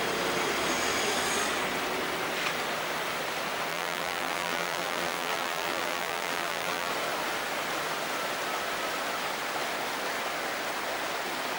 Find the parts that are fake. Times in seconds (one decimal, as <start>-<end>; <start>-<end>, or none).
3.7-6.9